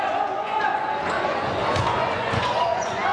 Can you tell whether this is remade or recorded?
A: remade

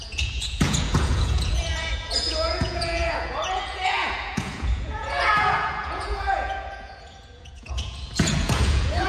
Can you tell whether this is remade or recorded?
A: remade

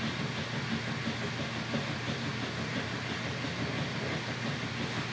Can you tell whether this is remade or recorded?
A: recorded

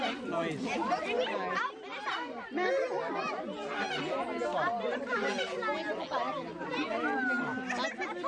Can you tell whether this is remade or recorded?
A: recorded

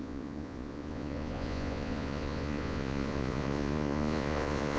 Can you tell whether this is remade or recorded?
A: remade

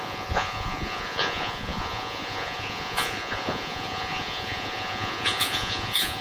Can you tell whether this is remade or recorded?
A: remade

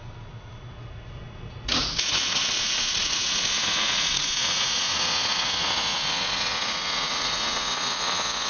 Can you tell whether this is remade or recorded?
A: remade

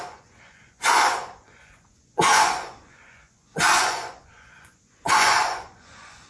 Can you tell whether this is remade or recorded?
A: remade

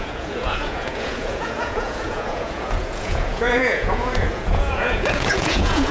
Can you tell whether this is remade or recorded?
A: remade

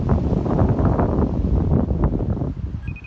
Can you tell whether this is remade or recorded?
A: recorded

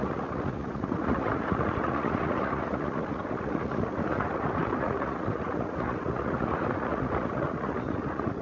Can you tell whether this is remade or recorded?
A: remade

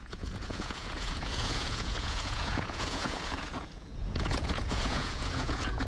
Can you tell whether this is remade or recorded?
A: remade